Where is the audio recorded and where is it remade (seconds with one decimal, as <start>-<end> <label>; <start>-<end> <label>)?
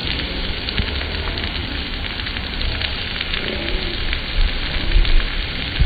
0.0-0.5 remade; 0.5-1.6 recorded; 1.6-3.0 remade; 3.0-5.9 recorded